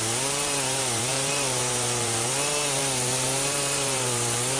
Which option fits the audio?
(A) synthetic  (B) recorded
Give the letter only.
A